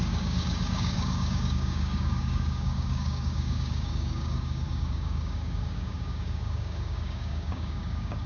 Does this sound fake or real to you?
fake